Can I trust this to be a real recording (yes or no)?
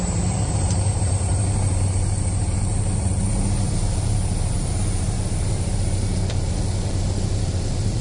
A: no